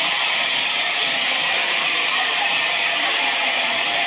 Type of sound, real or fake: fake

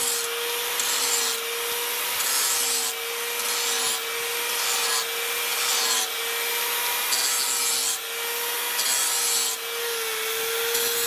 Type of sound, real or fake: real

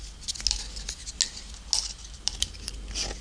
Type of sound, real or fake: real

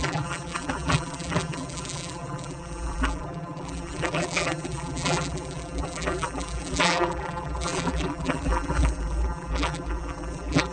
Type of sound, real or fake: fake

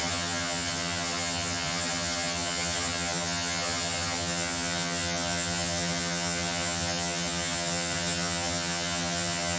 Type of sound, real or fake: fake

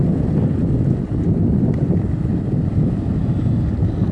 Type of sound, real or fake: real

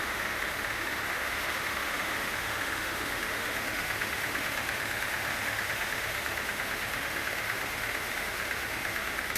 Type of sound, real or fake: fake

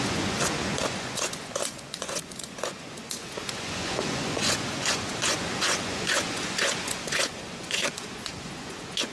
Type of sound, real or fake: fake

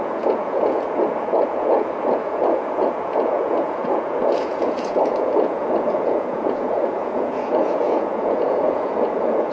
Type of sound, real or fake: fake